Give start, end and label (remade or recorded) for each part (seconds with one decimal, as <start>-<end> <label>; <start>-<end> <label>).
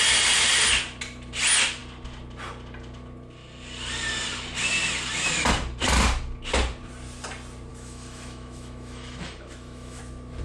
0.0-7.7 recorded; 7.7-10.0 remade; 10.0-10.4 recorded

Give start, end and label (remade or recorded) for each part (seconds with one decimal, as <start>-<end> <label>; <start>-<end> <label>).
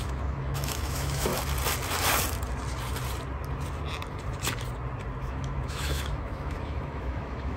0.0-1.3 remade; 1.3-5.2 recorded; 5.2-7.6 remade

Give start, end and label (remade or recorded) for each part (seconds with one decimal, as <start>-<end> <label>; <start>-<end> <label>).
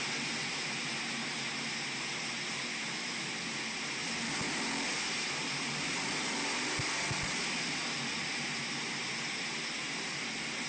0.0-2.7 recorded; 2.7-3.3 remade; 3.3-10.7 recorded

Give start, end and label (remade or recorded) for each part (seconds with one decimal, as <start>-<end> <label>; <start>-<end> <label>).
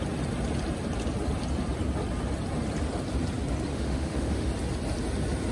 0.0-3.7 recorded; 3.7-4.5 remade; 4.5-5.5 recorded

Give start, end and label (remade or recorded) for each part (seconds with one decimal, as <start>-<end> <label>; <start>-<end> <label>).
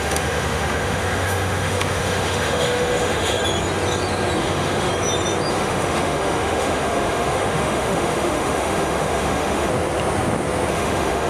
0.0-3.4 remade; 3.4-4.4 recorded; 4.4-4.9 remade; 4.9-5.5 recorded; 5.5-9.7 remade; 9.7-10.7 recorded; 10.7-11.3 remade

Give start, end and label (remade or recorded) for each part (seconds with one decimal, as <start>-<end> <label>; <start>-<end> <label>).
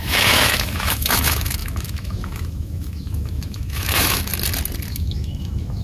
0.0-4.3 remade; 4.3-4.9 recorded; 4.9-5.8 remade